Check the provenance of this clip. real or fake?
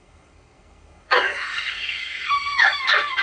fake